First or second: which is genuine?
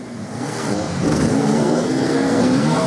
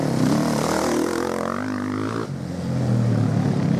second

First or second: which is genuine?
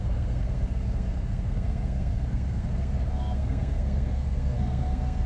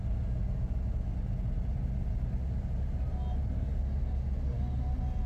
second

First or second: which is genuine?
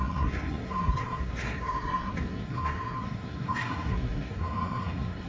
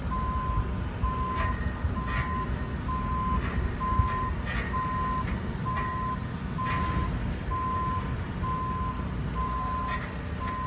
second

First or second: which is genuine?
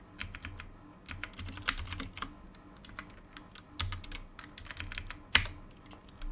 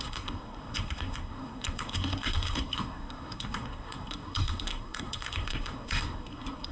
first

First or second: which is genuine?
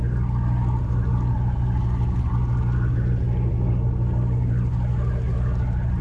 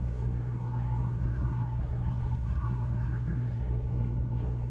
first